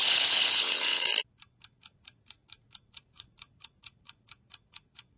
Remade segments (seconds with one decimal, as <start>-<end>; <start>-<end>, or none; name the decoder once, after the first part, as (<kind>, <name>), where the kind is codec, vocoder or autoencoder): 0.0-1.1 (vocoder, Vocos); 1.8-5.2